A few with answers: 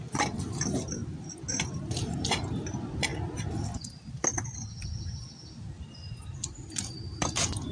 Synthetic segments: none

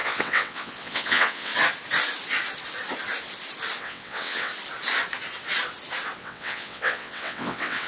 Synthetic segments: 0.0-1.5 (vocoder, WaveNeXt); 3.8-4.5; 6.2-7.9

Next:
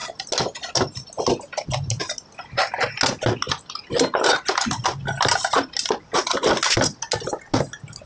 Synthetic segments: none

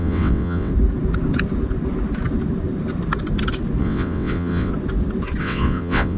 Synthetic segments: 0.0-0.7 (vocoder, WaveNeXt); 3.8-4.7; 5.4-6.2

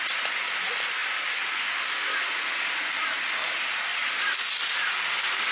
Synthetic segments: none

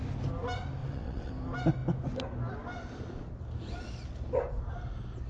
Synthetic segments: 0.8-1.3 (vocoder, WaveNeXt)

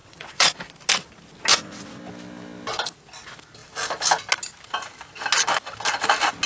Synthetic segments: 0.0-0.5 (vocoder, WaveNeXt); 1.5-2.0

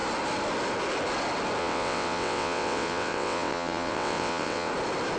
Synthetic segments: 1.6-4.7 (vocoder, WaveNeXt)